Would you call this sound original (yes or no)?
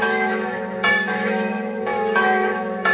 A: no